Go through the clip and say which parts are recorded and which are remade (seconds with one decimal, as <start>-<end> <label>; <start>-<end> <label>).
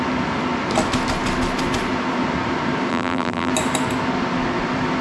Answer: 0.0-2.9 recorded; 2.9-3.5 remade; 3.5-5.0 recorded